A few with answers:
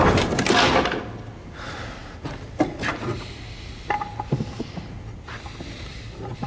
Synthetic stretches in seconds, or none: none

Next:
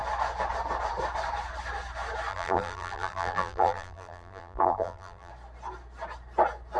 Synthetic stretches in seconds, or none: 2.3-5.3 (vocoder, BigVGAN v2)

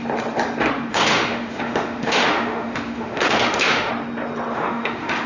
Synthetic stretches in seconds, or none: 0.9-3.9 (autoencoder, DAC-VAE); 4.5-5.3

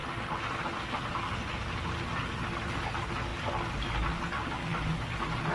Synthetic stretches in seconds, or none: none

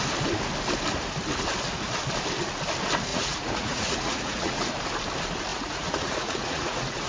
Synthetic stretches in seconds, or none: 3.1-4.7 (vocoder, Vocos); 5.5-7.1

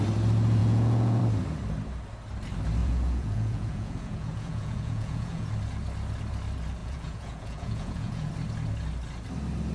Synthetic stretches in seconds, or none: 0.6-1.2 (vocoder, Vocos); 2.8-5.5; 6.8-8.3

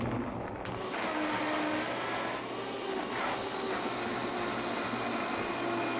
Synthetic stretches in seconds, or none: none

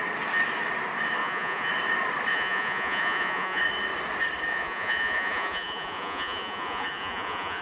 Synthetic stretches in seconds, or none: 1.2-1.7 (vocoder, Vocos); 2.3-3.6; 4.5-7.6